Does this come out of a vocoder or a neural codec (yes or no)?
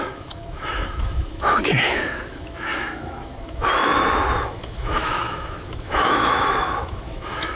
yes